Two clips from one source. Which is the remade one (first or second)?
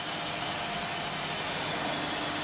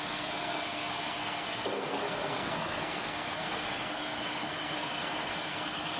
second